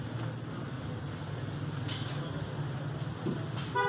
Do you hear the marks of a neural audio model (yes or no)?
no